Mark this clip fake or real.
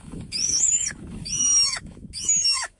fake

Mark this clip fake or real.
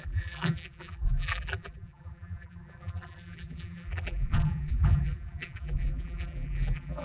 fake